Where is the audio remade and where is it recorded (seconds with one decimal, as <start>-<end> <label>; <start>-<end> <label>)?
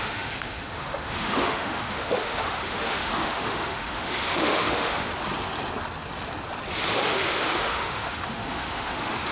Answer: 0.0-5.1 remade; 5.1-6.9 recorded; 6.9-9.3 remade